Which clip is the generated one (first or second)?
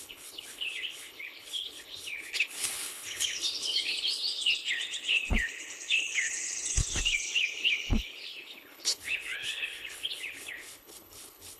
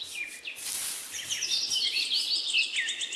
first